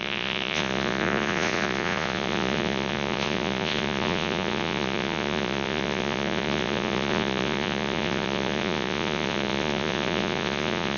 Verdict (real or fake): fake